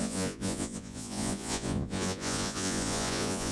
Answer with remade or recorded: remade